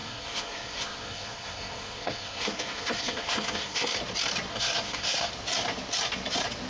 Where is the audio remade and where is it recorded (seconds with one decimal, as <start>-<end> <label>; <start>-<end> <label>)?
0.0-4.0 remade; 4.0-4.5 recorded; 4.5-5.3 remade; 5.3-6.7 recorded